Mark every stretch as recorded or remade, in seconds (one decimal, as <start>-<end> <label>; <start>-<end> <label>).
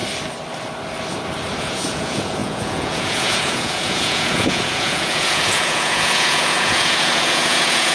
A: 0.0-1.6 recorded; 1.6-7.9 remade